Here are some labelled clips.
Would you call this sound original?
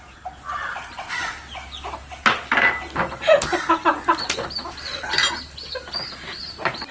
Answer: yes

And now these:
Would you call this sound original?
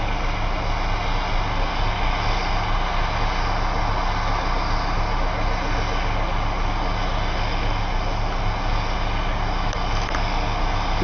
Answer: yes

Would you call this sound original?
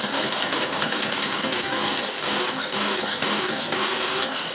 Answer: no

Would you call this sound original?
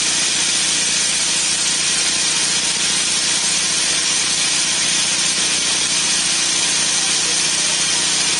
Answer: yes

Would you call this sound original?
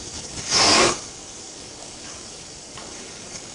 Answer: no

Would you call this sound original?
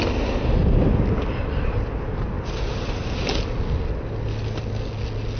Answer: yes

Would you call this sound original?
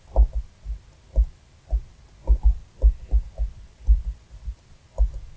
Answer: yes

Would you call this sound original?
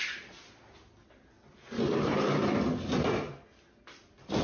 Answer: yes